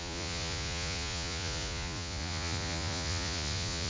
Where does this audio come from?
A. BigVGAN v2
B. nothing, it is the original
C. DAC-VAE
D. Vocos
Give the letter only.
D